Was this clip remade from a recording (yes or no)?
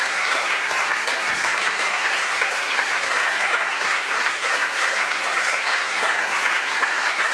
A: yes